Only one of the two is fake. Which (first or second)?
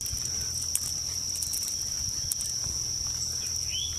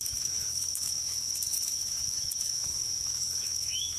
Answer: second